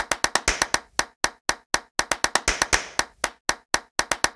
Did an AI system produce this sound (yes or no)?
no